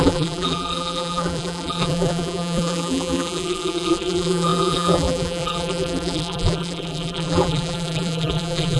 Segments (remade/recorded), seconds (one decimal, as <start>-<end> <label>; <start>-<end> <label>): 0.0-8.8 remade

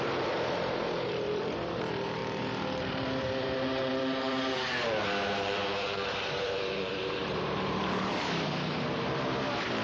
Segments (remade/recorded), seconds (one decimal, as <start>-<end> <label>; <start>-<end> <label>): 0.0-2.2 remade; 2.2-2.8 recorded; 2.8-9.8 remade

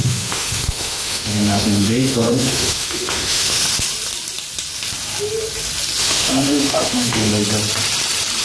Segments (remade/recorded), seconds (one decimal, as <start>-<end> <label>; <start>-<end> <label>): 0.0-3.6 remade; 3.6-6.0 recorded; 6.0-7.3 remade; 7.3-8.4 recorded